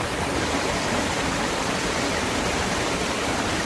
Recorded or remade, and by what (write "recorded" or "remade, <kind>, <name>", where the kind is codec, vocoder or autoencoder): recorded